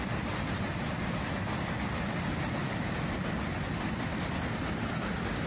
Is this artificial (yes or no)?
no